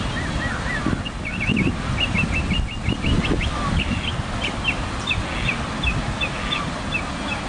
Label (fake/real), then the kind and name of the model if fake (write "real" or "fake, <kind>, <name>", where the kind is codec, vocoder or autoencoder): real